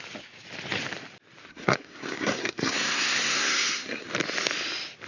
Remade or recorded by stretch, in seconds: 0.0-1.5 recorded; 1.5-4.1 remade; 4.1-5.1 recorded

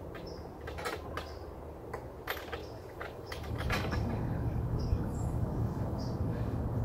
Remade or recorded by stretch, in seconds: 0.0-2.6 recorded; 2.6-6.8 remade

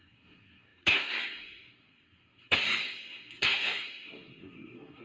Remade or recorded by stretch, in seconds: 0.0-5.0 remade

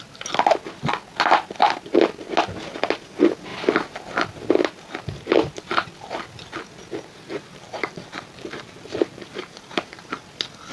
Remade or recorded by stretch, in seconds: 0.0-7.3 recorded; 7.3-10.2 remade; 10.2-10.7 recorded

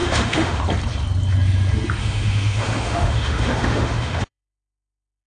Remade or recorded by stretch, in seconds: 0.0-0.6 remade; 0.6-2.0 recorded; 2.0-5.3 remade